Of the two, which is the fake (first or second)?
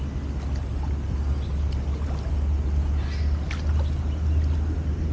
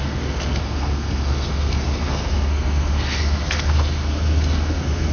second